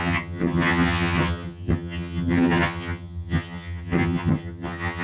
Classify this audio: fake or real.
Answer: fake